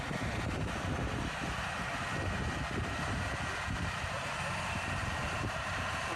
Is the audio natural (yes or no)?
yes